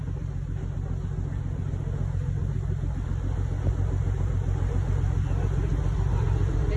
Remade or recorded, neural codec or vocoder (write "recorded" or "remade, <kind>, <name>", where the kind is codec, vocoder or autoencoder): recorded